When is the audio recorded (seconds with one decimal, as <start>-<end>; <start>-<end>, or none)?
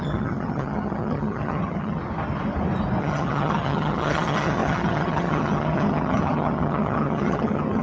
2.0-3.0